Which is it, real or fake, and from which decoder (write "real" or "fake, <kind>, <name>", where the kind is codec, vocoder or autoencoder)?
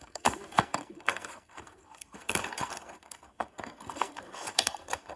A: fake, codec, SNAC